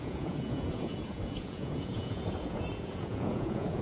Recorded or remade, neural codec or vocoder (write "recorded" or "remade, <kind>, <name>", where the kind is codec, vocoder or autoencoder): remade, vocoder, Vocos